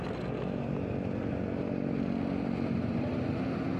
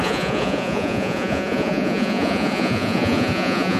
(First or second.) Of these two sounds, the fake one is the second